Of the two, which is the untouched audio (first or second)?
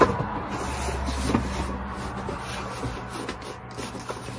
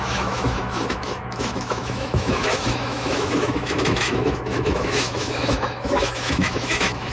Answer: first